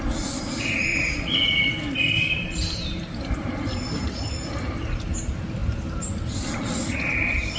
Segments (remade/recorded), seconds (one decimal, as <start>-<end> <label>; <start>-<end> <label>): 0.0-0.9 recorded; 0.9-3.5 remade; 3.5-7.6 recorded